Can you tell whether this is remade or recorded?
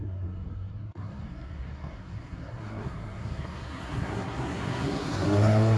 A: remade